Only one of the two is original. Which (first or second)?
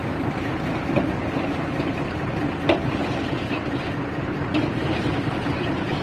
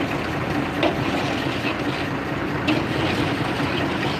second